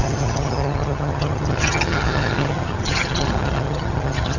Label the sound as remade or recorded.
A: remade